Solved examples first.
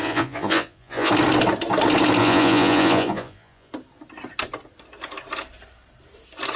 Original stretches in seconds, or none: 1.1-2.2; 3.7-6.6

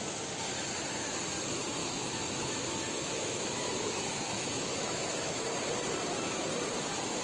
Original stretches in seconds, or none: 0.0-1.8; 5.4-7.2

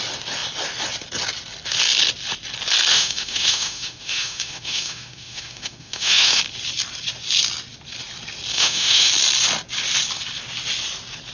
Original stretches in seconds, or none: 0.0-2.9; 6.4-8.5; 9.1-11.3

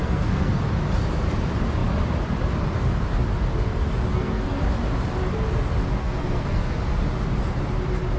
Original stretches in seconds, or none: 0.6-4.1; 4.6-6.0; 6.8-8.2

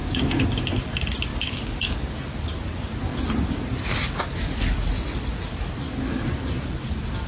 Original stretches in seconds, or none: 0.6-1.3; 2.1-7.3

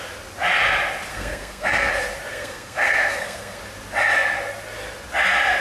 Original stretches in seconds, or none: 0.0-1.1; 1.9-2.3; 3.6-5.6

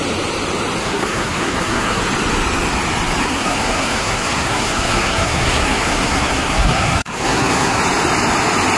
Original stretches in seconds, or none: 0.0-0.8; 2.0-3.2; 7.8-8.8